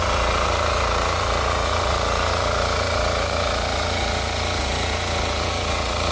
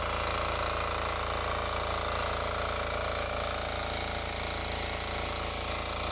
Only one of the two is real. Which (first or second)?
second